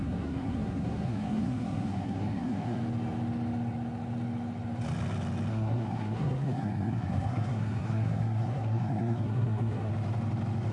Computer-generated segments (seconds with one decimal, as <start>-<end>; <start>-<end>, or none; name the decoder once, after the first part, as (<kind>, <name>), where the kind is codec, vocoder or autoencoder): 0.0-2.8 (codec, SNAC); 5.5-9.9